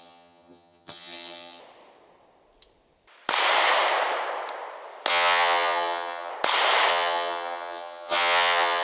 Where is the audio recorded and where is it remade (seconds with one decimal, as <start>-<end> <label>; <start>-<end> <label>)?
0.0-1.6 remade; 1.6-5.1 recorded; 5.1-6.3 remade; 6.3-6.9 recorded; 6.9-8.8 remade